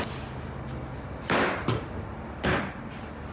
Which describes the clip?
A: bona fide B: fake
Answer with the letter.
A